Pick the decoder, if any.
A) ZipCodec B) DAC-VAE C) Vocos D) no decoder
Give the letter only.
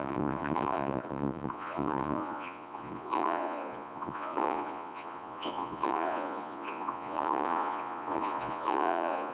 C